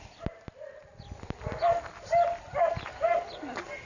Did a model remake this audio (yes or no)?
no